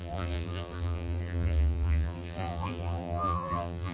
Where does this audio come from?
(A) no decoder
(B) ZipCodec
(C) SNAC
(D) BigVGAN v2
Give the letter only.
D